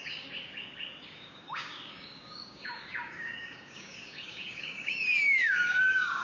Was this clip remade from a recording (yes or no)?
yes